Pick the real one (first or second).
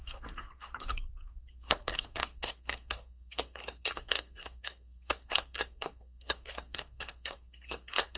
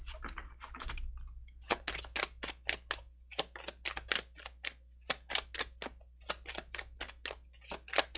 second